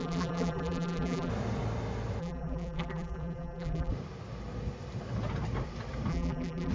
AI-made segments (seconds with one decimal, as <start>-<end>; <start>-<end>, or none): 0.0-1.3; 2.2-3.9; 6.1-6.7